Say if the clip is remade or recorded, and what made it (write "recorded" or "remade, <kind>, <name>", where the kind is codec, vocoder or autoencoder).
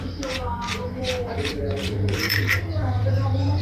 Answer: remade, vocoder, BigVGAN v2